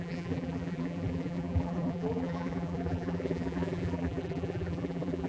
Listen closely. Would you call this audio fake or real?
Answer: fake